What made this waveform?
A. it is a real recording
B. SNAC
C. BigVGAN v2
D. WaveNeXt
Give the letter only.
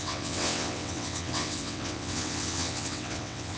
D